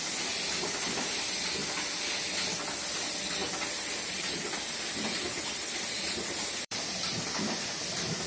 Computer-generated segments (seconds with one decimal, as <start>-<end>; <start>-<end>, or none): 0.0-1.6; 2.3-8.3